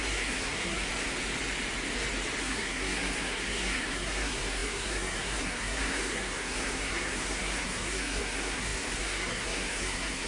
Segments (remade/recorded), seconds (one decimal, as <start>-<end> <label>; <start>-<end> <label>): 0.0-0.9 remade; 0.9-2.4 recorded; 2.4-10.3 remade